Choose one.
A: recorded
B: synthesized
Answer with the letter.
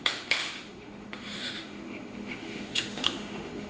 B